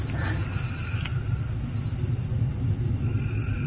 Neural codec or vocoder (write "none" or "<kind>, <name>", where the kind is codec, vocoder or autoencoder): none